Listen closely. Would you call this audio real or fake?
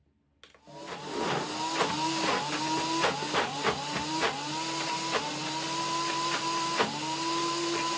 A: real